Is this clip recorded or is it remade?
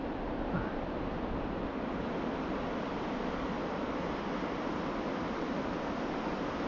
recorded